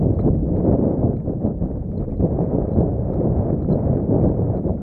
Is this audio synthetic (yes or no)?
yes